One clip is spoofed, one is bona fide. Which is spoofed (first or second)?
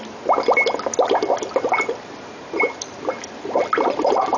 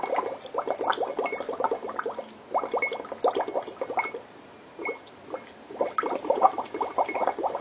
first